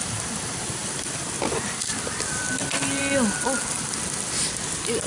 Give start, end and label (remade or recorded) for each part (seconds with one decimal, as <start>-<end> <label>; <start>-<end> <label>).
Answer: 0.0-5.1 recorded